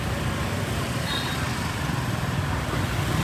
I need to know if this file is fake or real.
fake